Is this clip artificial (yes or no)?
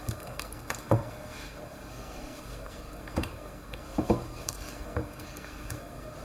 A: yes